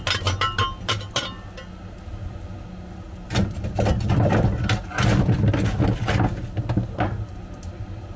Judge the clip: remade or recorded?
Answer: recorded